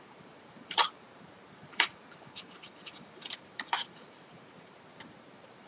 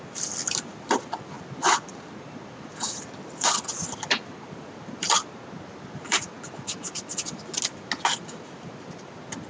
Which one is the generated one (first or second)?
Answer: first